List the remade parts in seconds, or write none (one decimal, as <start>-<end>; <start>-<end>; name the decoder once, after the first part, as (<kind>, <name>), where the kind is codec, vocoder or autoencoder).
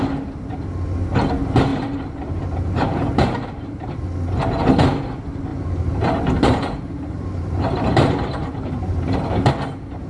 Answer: 1.7-4.0 (vocoder, BigVGAN v2); 5.5-9.5